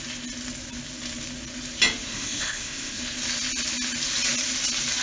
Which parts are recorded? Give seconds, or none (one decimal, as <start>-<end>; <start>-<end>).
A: 0.0-2.1; 3.0-5.0